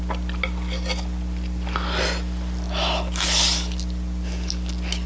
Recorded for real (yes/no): yes